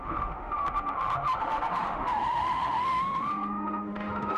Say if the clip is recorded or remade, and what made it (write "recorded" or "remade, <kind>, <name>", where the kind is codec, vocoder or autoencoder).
remade, autoencoder, DAC-VAE